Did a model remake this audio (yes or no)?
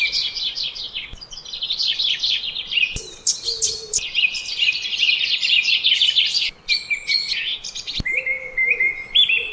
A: no